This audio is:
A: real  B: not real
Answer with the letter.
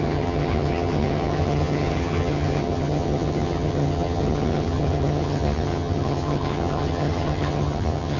B